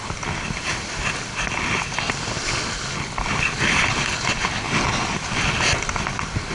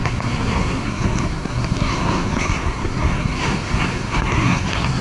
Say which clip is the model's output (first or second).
second